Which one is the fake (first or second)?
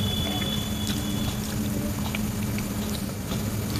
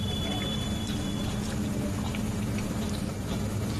second